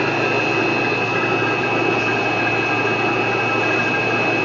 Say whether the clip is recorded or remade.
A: recorded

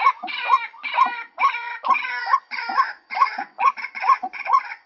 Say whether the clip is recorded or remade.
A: remade